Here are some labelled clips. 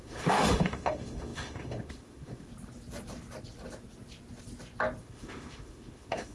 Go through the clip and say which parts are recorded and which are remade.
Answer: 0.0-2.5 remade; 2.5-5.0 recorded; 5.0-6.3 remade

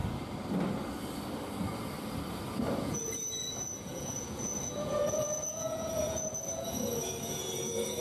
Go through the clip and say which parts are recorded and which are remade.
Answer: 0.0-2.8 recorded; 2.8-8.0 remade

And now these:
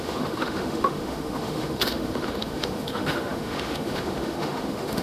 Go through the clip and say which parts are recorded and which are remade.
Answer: 0.0-5.0 remade

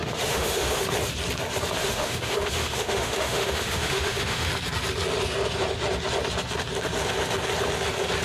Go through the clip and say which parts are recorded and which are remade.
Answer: 0.0-0.8 remade; 0.8-1.8 recorded; 1.8-4.5 remade; 4.5-8.2 recorded